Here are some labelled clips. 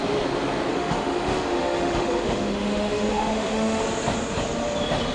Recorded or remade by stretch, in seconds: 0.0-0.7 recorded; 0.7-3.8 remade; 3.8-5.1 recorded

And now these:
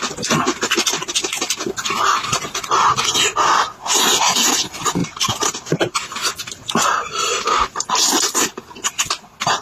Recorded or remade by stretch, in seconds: 0.0-5.0 recorded; 5.0-7.5 remade; 7.5-9.6 recorded

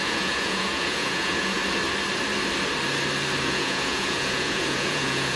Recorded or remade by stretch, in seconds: 0.0-1.6 remade; 1.6-3.4 recorded; 3.4-5.4 remade

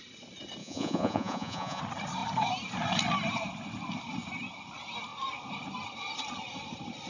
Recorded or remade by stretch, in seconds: 0.0-0.6 recorded; 0.6-1.8 remade; 1.8-7.1 recorded

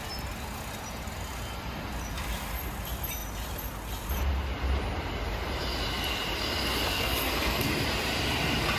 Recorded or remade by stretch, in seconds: 0.0-6.9 recorded; 6.9-7.7 remade; 7.7-8.8 recorded

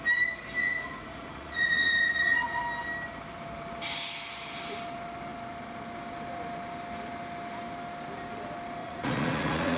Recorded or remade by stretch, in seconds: 0.0-0.6 recorded; 0.6-2.6 remade; 2.6-8.8 recorded; 8.8-9.8 remade